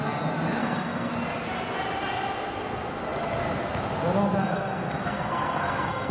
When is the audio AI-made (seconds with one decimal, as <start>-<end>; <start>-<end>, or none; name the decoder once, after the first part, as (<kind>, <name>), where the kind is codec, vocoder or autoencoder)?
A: 0.6-1.1 (codec, SNAC); 4.4-6.1